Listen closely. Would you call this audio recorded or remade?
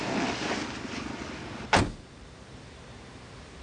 recorded